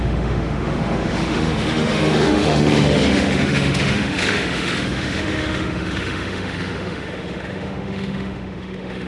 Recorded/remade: remade